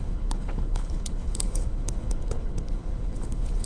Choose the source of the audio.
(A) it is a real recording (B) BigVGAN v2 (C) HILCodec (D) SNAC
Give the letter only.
C